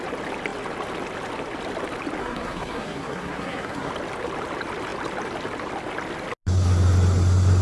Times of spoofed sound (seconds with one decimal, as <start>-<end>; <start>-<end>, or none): 2.2-3.9